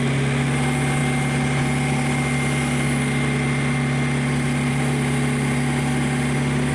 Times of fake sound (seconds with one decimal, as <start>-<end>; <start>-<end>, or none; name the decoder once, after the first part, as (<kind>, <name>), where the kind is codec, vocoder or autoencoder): none